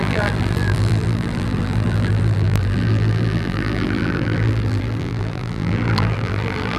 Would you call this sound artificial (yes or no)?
yes